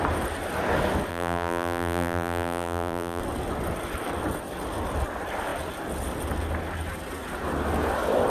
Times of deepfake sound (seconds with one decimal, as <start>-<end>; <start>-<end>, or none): 1.1-3.2